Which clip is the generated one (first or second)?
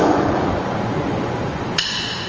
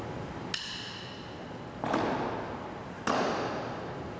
first